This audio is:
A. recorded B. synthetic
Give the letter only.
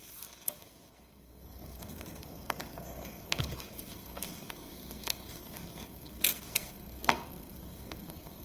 B